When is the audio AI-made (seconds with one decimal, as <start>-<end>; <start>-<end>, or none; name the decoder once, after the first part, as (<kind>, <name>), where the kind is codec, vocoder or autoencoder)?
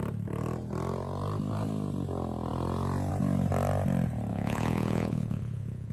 4.3-5.9 (vocoder, Vocos)